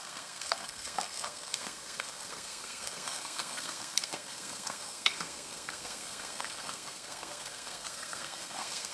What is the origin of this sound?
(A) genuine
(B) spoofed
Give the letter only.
B